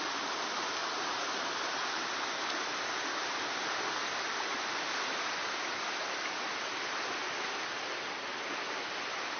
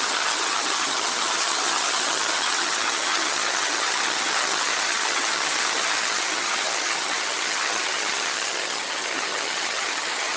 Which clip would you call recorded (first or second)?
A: first